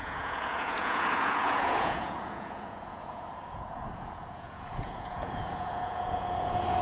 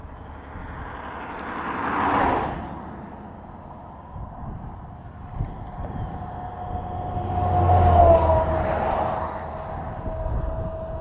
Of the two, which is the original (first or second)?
second